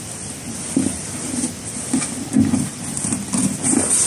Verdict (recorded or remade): recorded